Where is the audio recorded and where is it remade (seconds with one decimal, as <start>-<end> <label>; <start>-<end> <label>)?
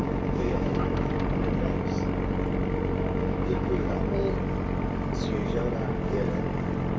0.0-1.1 remade; 1.1-3.2 recorded; 3.2-3.9 remade; 3.9-7.0 recorded